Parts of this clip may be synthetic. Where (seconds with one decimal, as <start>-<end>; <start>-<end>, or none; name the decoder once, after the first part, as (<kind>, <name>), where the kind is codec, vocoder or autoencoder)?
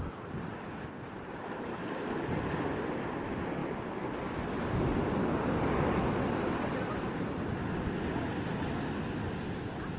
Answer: none